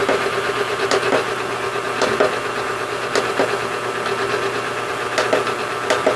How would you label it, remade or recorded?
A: recorded